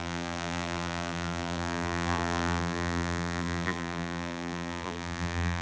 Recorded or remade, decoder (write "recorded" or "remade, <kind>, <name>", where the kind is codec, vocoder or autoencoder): remade, vocoder, BigVGAN v2